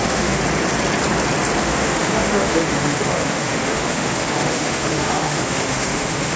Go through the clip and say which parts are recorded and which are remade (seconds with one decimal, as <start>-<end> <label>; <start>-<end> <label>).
0.0-0.4 remade; 0.4-1.6 recorded; 1.6-6.4 remade